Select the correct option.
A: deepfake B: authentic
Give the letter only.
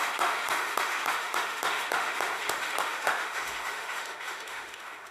A